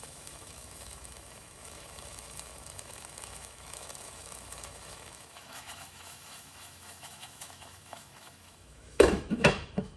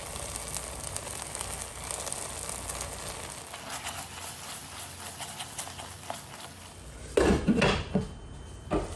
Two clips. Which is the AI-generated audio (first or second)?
first